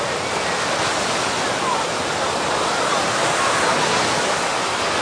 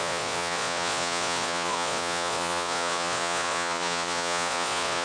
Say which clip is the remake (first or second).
second